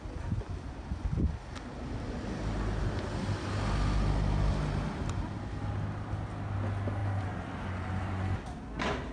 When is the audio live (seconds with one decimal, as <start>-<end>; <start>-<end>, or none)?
0.0-9.1